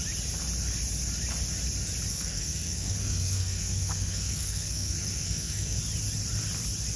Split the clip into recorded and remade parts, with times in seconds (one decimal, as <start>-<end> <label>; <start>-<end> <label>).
0.0-2.1 recorded; 2.1-5.8 remade; 5.8-7.0 recorded